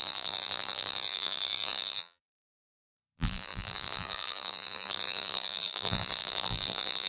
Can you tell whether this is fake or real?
fake